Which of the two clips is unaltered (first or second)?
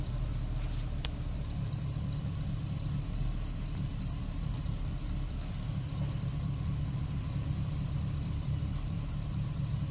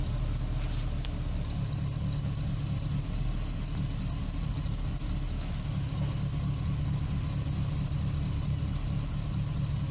second